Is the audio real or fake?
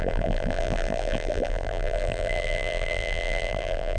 fake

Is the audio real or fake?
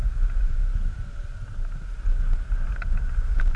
real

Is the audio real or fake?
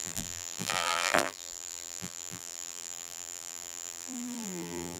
fake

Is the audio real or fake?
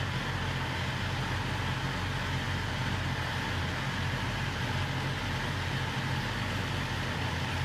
real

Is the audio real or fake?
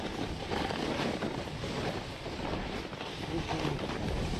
real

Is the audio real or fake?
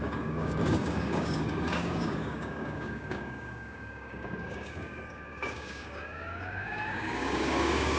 fake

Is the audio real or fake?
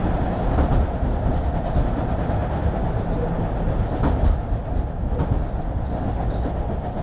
real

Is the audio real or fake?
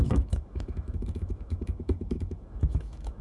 fake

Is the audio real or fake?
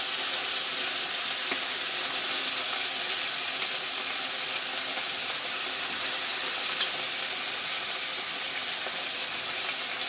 real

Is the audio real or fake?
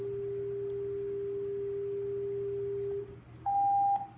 real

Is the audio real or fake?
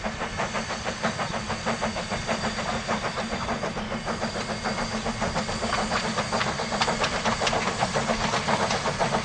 real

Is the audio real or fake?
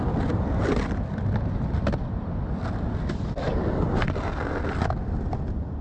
real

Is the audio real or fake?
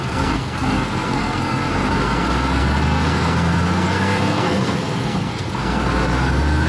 fake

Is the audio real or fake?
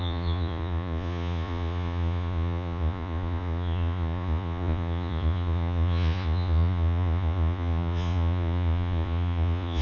fake